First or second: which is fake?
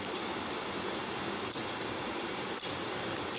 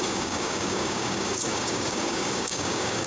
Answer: second